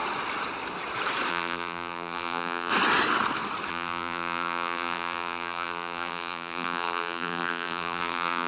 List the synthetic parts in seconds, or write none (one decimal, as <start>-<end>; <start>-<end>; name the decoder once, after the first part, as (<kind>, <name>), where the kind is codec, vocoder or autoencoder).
1.3-2.7 (vocoder, BigVGAN v2); 3.7-8.5